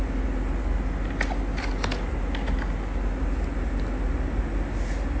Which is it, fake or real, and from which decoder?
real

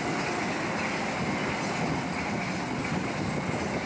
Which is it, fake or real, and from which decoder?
real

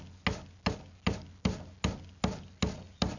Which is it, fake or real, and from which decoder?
real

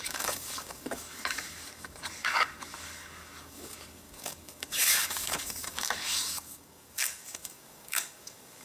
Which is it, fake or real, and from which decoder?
fake, codec, DAC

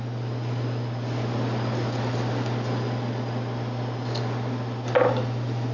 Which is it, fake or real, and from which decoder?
real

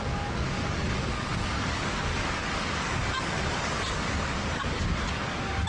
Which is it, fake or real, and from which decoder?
fake, codec, DAC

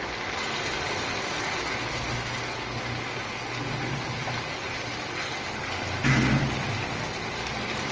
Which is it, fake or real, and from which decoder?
real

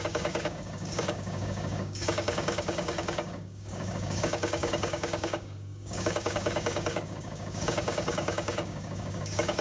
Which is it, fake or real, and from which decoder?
fake, codec, DAC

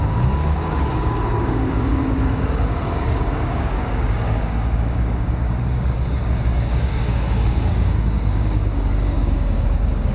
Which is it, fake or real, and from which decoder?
fake, codec, DAC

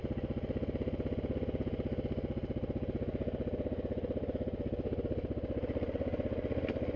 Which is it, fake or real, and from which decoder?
real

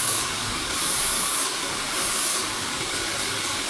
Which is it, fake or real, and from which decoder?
fake, codec, DAC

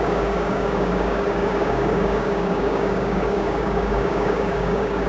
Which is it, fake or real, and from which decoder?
fake, codec, DAC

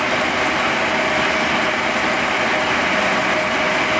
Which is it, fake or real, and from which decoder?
real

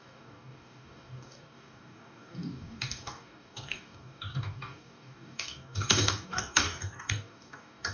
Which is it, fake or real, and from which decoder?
fake, codec, DAC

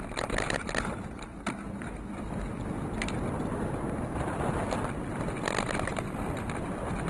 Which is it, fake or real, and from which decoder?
real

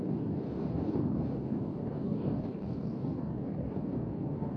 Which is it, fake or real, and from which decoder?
fake, codec, DAC